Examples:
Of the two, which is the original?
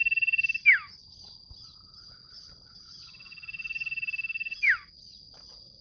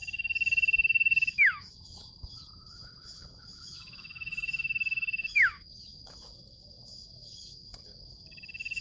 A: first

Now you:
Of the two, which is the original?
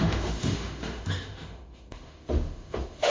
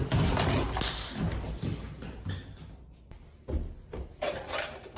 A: second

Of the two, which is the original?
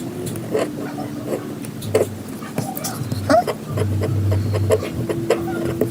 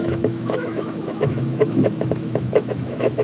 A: first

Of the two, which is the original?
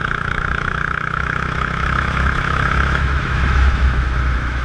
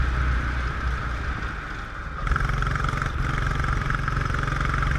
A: second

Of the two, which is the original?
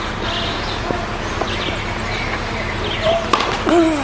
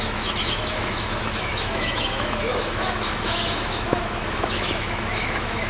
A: first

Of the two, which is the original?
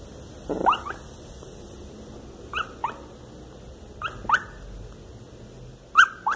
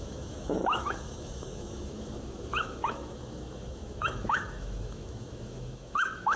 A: first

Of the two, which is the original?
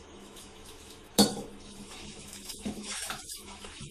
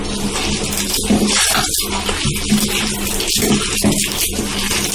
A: second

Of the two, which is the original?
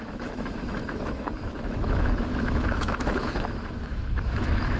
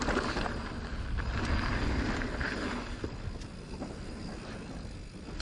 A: second